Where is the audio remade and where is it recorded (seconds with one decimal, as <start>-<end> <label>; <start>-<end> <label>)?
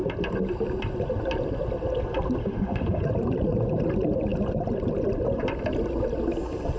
0.0-2.4 recorded; 2.4-3.0 remade; 3.0-6.8 recorded